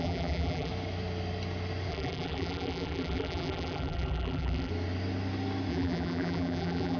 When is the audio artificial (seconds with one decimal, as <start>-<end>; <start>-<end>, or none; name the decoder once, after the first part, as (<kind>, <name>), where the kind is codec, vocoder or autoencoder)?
0.0-0.7 (vocoder, BigVGAN v2); 1.9-4.7; 5.7-7.0